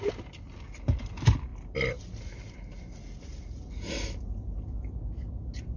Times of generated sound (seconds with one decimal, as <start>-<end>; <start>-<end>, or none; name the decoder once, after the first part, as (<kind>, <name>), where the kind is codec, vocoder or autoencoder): none